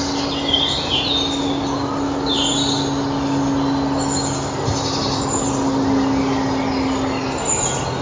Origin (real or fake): real